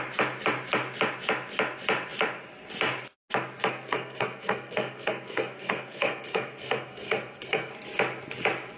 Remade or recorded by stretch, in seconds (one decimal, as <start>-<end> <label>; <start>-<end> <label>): 0.0-3.7 recorded; 3.7-7.7 remade; 7.7-8.8 recorded